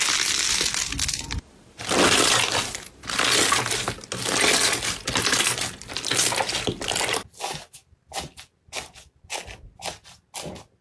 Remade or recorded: recorded